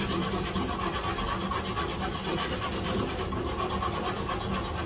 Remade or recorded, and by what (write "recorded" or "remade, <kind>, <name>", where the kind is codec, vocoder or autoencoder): recorded